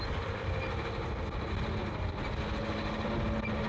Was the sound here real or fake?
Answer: real